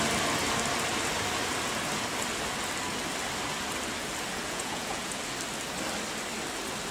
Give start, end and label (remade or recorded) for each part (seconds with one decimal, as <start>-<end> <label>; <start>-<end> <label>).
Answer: 0.0-4.3 recorded; 4.3-5.2 remade; 5.2-6.9 recorded